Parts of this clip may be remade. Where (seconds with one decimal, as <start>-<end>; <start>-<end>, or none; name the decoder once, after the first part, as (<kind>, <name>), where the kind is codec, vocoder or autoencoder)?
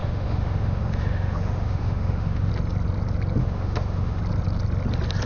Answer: 0.0-2.5 (autoencoder, DAC-VAE); 3.4-4.2